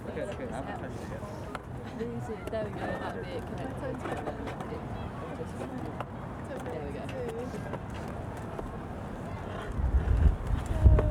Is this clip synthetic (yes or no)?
no